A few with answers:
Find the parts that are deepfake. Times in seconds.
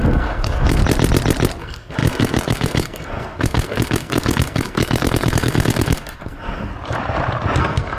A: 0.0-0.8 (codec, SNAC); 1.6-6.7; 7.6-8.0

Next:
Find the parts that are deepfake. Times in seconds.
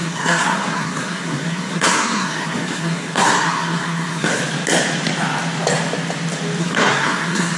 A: 0.0-4.4 (codec, SNAC); 6.6-7.6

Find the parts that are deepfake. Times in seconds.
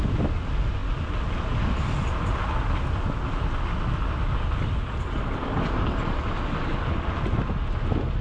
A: none